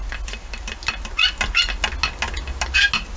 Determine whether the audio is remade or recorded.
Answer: recorded